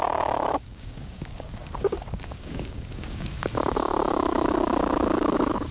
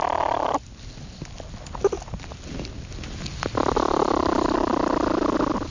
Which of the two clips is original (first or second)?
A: second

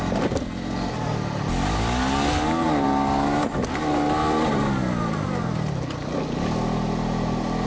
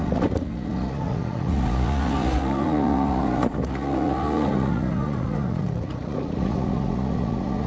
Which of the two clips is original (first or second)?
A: first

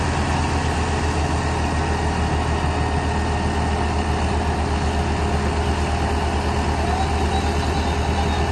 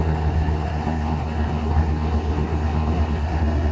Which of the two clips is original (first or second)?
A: first